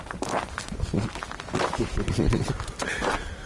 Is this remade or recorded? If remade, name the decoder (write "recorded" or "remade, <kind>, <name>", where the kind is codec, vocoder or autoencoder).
recorded